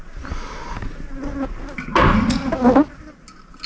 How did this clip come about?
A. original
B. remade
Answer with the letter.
A